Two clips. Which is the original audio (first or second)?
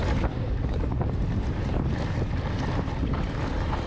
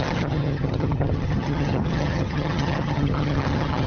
first